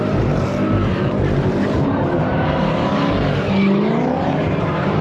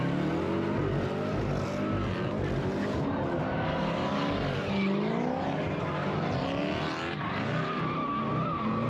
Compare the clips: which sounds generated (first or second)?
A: first